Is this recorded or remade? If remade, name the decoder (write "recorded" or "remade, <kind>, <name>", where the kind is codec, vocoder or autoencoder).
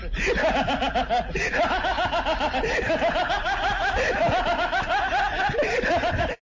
recorded